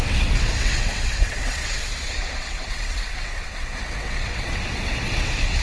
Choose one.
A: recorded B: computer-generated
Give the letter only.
B